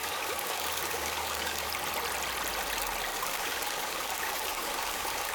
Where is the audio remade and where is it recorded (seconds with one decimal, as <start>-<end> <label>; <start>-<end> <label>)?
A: 0.0-1.7 remade; 1.7-3.1 recorded; 3.1-5.3 remade